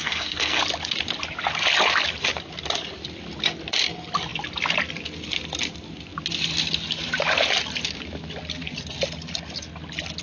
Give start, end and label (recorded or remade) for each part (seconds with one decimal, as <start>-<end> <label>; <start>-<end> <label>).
0.0-0.6 remade; 0.6-10.2 recorded